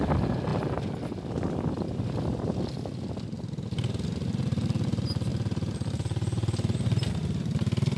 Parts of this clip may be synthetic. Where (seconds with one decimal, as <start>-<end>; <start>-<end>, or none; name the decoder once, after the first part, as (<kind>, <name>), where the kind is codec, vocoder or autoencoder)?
none